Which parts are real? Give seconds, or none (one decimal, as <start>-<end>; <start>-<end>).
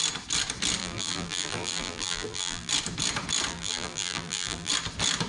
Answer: 0.0-0.8; 2.7-3.5; 4.7-5.3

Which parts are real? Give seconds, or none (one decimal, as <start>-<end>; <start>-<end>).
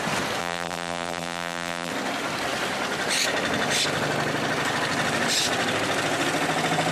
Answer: 0.0-0.4; 1.9-6.9